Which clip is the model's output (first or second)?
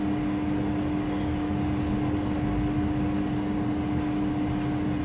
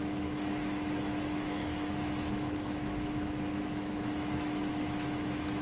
second